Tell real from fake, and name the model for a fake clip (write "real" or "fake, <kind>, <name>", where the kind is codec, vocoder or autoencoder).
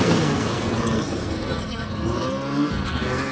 fake, codec, SNAC